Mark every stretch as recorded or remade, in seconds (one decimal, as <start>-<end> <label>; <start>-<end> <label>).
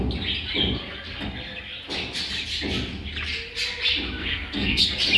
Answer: 0.0-4.2 recorded; 4.2-4.8 remade; 4.8-5.2 recorded